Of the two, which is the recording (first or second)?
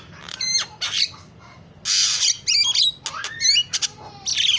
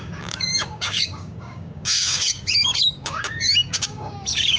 first